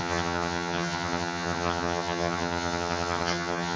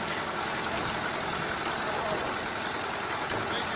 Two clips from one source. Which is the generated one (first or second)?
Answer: first